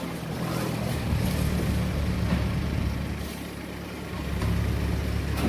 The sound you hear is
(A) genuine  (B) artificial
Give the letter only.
A